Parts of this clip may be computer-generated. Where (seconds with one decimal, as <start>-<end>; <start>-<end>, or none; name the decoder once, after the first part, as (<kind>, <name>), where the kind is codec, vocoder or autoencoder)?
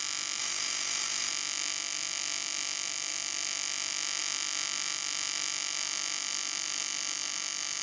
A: 0.4-1.3 (autoencoder, DAC-VAE)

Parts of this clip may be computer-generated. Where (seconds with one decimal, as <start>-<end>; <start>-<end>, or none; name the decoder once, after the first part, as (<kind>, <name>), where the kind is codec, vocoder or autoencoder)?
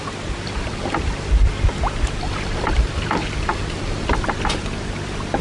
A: none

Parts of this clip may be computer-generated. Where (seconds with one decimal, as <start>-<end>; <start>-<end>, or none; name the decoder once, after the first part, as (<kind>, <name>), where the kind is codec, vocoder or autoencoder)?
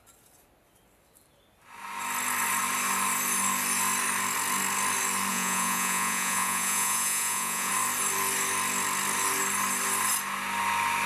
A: 5.3-7.7 (vocoder, Vocos)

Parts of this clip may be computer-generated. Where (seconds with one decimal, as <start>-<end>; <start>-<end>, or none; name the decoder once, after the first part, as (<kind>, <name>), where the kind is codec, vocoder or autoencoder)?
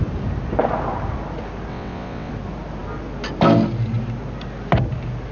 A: 1.7-2.3 (vocoder, WaveNeXt)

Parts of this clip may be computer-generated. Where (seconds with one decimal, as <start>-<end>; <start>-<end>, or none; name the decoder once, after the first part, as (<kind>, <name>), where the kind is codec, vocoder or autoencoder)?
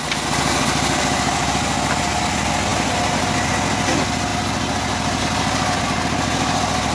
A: none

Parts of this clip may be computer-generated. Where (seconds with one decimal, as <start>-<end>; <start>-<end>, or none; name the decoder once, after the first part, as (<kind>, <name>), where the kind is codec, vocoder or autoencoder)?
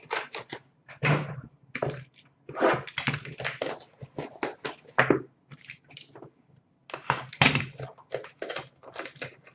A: none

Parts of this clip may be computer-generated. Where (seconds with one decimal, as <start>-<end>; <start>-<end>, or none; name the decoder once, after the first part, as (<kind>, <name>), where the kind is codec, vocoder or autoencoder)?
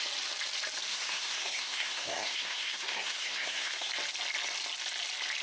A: 0.9-3.9 (codec, SNAC)